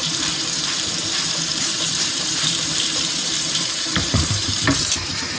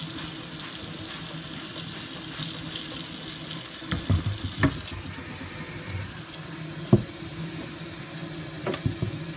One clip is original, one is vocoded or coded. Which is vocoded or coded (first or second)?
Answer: first